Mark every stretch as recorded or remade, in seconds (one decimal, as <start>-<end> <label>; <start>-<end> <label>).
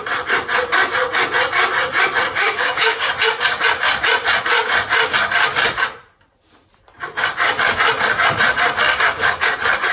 0.0-2.3 recorded; 2.3-3.1 remade; 3.1-8.9 recorded; 8.9-9.5 remade; 9.5-9.9 recorded